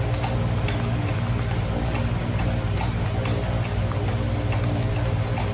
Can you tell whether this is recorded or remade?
recorded